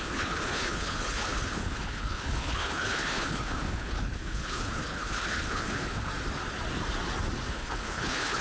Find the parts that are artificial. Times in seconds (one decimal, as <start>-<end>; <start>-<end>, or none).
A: 0.0-6.1; 7.5-8.4